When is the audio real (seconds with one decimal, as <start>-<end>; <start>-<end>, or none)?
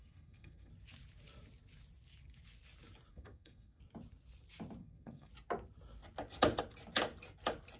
0.7-3.1; 3.8-4.8; 5.3-7.8